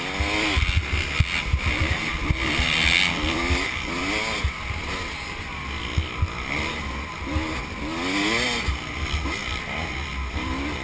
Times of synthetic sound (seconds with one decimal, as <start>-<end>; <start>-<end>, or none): none